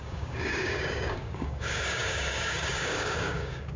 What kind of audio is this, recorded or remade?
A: remade